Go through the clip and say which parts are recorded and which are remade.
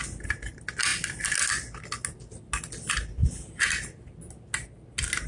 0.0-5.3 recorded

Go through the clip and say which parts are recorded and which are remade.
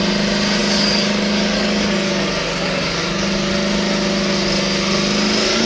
0.0-0.6 recorded; 0.6-3.5 remade; 3.5-5.7 recorded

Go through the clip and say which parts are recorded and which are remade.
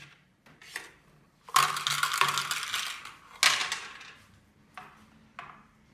0.0-5.9 recorded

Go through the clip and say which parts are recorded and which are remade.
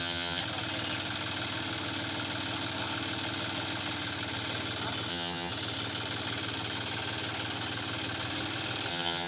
0.0-0.4 remade; 0.4-5.1 recorded; 5.1-5.5 remade; 5.5-8.9 recorded; 8.9-9.3 remade